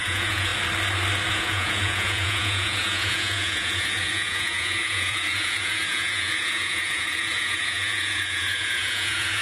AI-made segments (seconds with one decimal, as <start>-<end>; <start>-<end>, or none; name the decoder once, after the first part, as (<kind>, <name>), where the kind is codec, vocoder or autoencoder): 0.0-0.5 (vocoder, Vocos); 1.3-9.4

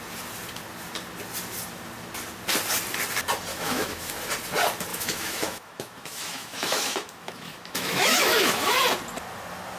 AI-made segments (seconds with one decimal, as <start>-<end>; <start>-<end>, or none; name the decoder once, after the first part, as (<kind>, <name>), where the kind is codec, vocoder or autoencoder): 3.5-4.1 (autoencoder, DAC-VAE); 4.9-8.7